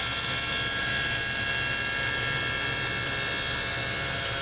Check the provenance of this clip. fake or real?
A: real